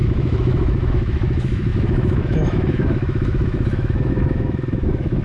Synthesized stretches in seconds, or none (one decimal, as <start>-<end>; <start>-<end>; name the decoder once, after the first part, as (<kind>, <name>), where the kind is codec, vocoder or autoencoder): 0.0-5.2 (autoencoder, DAC-VAE)

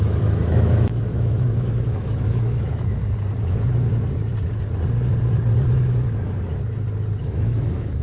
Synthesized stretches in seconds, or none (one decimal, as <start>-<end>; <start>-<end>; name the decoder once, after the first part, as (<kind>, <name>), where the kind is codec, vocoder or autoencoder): 0.0-3.0 (autoencoder, DAC-VAE); 7.2-8.0

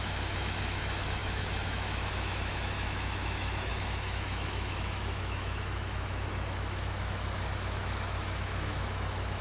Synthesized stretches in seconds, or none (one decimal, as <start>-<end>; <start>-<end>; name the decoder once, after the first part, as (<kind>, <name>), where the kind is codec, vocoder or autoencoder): 0.0-9.4 (autoencoder, DAC-VAE)

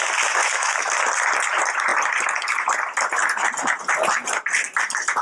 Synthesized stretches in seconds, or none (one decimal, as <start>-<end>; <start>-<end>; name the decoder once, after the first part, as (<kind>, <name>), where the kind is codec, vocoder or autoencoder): 0.4-0.9 (autoencoder, DAC-VAE)

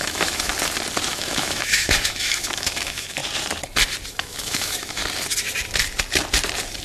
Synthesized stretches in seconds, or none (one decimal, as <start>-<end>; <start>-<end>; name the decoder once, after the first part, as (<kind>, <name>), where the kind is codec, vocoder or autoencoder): 0.0-0.5 (autoencoder, DAC-VAE); 1.1-3.2; 4.1-5.0